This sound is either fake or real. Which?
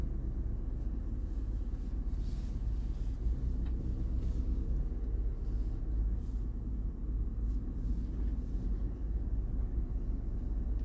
real